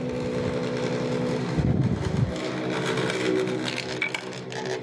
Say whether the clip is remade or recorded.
recorded